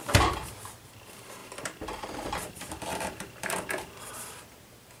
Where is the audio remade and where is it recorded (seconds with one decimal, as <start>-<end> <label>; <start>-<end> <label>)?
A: 0.0-5.0 remade

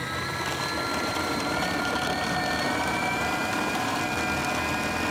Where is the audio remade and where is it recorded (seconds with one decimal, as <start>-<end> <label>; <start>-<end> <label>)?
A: 0.0-0.9 recorded; 0.9-4.0 remade; 4.0-5.1 recorded

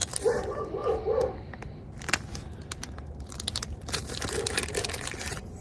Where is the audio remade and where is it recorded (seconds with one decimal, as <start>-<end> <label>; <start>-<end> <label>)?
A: 0.0-1.5 remade; 1.5-3.5 recorded; 3.5-5.6 remade

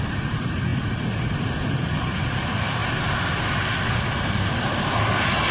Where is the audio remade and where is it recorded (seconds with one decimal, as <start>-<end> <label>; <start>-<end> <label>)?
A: 0.0-5.5 recorded

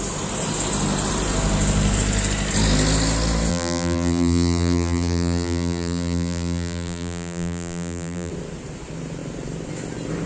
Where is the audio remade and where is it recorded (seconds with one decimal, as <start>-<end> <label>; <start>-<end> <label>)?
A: 0.0-3.5 recorded; 3.5-8.3 remade; 8.3-10.3 recorded

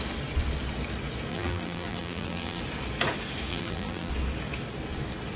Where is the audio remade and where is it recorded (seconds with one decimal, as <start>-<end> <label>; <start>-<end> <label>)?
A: 0.0-1.3 recorded; 1.3-2.6 remade; 2.6-3.5 recorded; 3.5-4.1 remade; 4.1-5.4 recorded

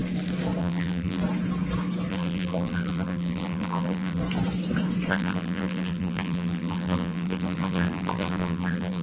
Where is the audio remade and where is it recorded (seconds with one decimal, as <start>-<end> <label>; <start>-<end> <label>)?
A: 0.0-0.6 recorded; 0.6-1.2 remade; 1.2-2.1 recorded; 2.1-4.2 remade; 4.2-5.1 recorded; 5.1-9.0 remade

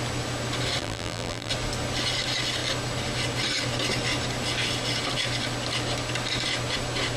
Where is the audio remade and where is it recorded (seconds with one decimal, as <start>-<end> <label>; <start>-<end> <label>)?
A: 0.0-0.8 recorded; 0.8-1.5 remade; 1.5-7.2 recorded